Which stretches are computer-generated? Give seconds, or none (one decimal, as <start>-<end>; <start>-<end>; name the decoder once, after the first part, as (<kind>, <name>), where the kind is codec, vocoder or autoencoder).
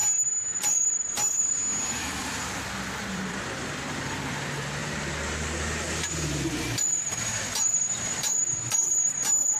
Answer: 0.7-1.6 (vocoder, BigVGAN v2); 3.0-4.8; 6.1-9.6